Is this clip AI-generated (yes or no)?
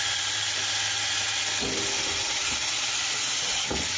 no